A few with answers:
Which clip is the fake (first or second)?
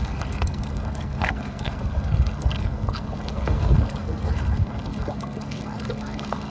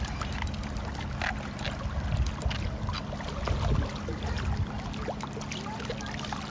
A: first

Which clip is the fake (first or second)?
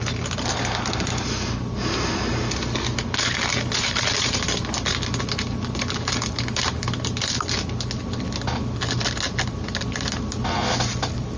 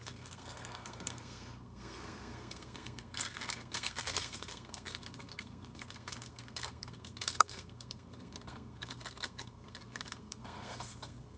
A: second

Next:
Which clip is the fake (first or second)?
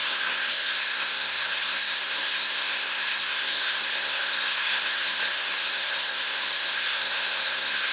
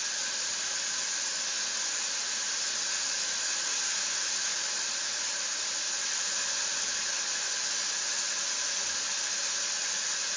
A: first